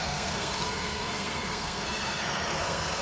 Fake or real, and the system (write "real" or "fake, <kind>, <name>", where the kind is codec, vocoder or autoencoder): fake, codec, SNAC